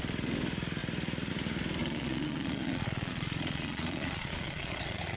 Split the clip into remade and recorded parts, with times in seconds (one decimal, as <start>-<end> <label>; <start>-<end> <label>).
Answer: 0.0-1.8 recorded; 1.8-5.2 remade